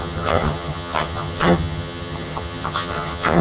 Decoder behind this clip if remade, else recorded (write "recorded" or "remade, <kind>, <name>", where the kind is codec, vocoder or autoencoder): remade, vocoder, HiFi-GAN